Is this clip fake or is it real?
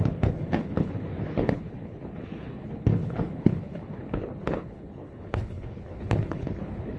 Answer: fake